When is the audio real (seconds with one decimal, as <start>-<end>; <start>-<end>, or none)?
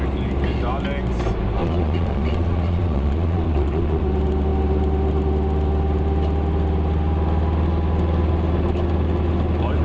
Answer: 0.0-1.6; 4.0-9.8